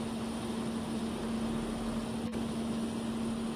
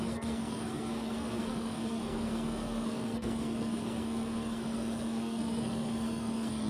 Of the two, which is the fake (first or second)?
second